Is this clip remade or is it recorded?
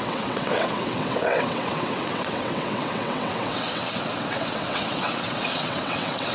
remade